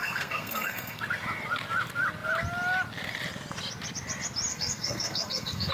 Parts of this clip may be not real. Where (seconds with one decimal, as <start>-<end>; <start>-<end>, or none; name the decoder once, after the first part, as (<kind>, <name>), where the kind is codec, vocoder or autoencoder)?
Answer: 0.0-1.0 (codec, SNAC); 4.5-5.7

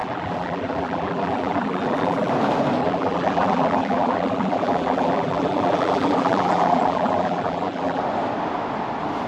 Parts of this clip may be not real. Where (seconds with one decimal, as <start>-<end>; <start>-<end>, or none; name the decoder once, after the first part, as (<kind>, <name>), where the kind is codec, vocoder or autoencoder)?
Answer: 0.0-2.3 (vocoder, BigVGAN v2); 2.8-8.0

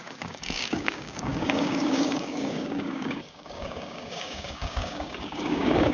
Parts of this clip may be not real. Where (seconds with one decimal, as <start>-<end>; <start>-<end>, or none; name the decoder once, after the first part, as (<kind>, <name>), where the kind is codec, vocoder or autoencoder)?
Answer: 0.0-5.9 (codec, DAC)

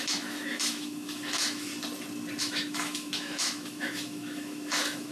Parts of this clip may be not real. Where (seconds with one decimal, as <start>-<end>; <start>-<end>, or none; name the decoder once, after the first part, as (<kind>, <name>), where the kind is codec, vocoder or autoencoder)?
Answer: 0.0-1.7 (autoencoder, DAC-VAE); 2.4-5.1

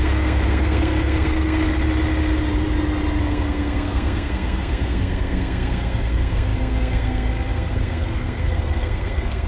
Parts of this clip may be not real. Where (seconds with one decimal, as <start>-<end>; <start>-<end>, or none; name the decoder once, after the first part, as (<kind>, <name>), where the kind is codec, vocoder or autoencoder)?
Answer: 0.0-1.7 (codec, SNAC); 3.2-9.5

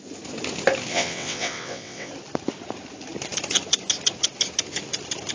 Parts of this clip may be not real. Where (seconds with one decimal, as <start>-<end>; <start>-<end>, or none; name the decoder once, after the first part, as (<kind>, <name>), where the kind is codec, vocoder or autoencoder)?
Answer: 0.9-2.1 (vocoder, WaveNeXt)

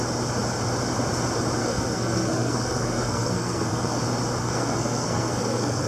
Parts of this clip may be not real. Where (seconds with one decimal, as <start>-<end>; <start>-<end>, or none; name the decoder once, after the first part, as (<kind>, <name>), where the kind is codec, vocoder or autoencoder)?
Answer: 1.6-4.0 (codec, SNAC); 4.4-5.9

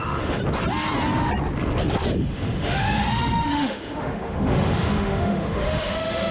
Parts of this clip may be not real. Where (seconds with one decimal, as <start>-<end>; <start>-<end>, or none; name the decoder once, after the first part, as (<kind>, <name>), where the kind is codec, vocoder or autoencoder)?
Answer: 0.0-0.4 (autoencoder, DAC-VAE); 2.3-6.3